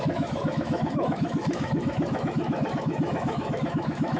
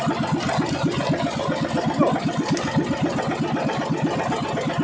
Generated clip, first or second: first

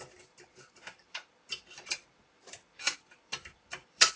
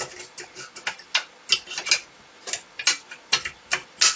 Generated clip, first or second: first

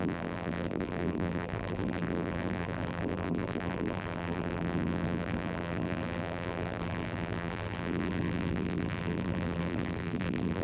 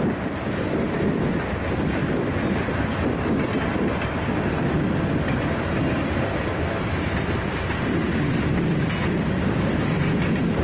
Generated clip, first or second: first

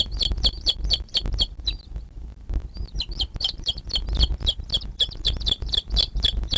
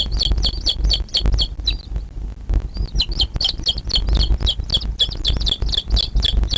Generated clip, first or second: first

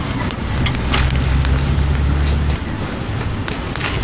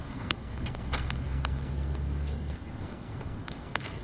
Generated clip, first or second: second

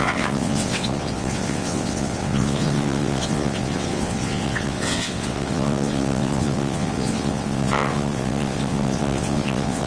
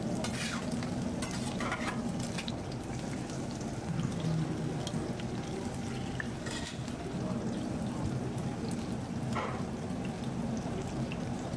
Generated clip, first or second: first